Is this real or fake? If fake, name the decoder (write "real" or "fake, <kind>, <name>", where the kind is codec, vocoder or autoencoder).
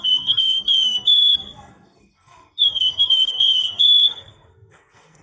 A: fake, codec, SNAC